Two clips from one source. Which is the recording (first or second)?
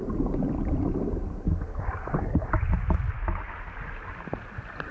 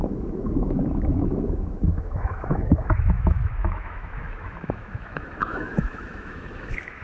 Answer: first